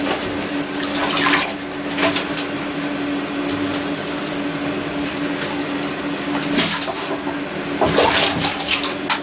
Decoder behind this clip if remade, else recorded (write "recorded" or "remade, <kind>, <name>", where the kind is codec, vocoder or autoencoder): recorded